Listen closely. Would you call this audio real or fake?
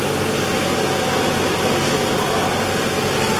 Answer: real